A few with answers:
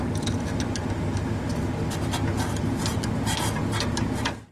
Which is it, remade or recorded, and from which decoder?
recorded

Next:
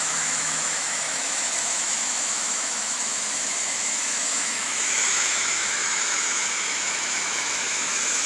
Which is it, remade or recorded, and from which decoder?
remade, autoencoder, DAC-VAE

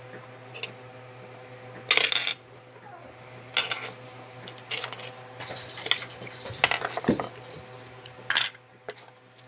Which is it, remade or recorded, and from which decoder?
recorded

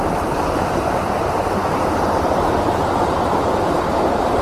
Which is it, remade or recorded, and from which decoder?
recorded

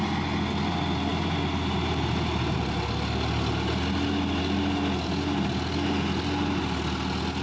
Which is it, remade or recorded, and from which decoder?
recorded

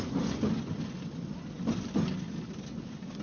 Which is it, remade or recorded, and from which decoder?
recorded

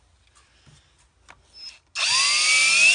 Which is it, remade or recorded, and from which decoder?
recorded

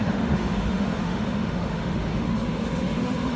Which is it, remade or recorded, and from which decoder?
remade, autoencoder, DAC-VAE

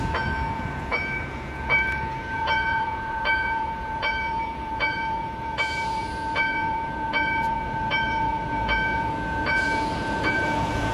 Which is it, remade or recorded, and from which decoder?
remade, vocoder, Vocos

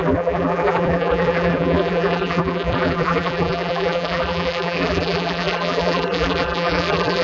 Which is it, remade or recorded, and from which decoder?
remade, vocoder, BigVGAN v2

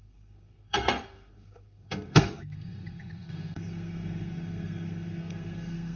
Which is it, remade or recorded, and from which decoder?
remade, codec, SNAC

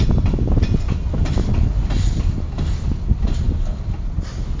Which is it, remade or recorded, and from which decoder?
recorded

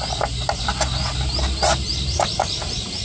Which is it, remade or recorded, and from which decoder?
recorded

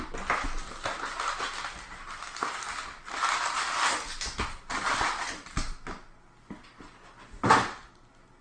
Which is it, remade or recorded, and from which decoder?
recorded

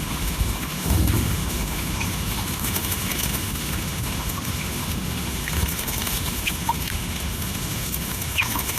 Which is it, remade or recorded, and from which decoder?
remade, autoencoder, DAC-VAE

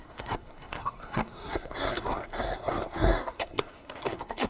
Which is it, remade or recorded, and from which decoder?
remade, codec, SNAC